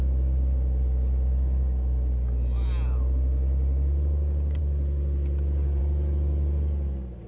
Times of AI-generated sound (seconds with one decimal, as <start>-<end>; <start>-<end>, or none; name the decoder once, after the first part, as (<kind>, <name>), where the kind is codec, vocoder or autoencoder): none